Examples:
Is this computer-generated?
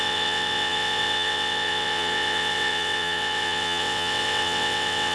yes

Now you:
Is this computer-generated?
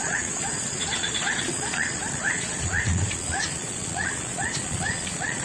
yes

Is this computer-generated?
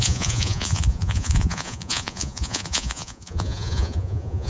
yes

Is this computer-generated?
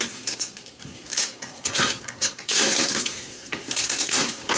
yes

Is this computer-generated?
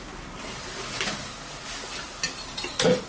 no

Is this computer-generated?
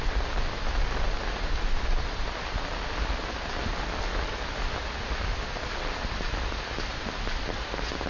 no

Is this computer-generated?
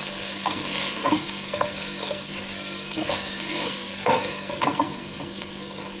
yes